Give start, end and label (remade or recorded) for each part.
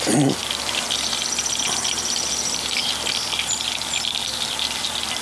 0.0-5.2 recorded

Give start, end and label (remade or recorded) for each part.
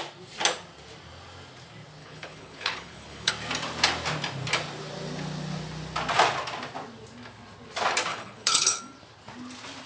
0.0-2.0 recorded; 2.0-3.3 remade; 3.3-8.1 recorded; 8.1-8.8 remade; 8.8-9.9 recorded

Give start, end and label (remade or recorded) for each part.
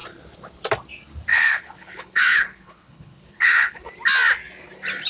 0.0-1.3 recorded; 1.3-3.8 remade; 3.8-5.1 recorded